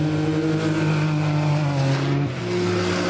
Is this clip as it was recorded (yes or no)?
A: yes